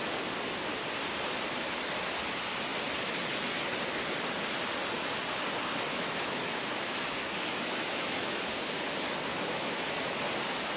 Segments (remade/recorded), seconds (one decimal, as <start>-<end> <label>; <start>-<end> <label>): 0.0-5.9 recorded; 5.9-8.4 remade; 8.4-9.3 recorded; 9.3-10.2 remade; 10.2-10.8 recorded